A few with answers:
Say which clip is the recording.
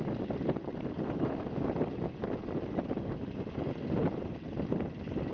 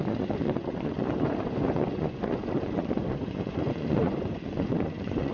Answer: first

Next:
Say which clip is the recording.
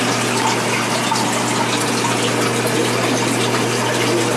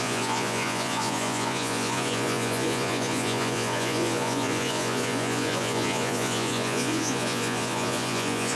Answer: first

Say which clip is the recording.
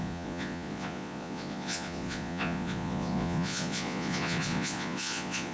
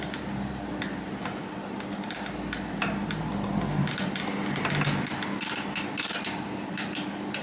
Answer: second